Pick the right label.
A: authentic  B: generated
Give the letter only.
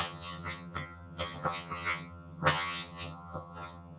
B